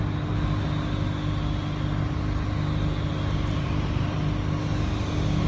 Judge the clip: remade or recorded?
recorded